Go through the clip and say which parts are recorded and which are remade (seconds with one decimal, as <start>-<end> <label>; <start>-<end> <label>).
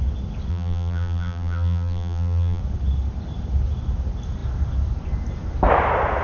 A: 0.0-0.5 recorded; 0.5-2.6 remade; 2.6-6.2 recorded